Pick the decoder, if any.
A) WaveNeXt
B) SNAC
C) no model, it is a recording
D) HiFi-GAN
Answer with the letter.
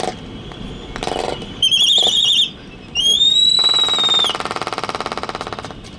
C